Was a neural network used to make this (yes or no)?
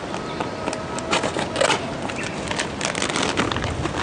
no